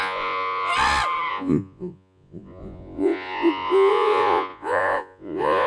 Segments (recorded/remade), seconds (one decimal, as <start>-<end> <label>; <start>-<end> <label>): 0.0-0.7 remade; 0.7-1.3 recorded; 1.3-5.7 remade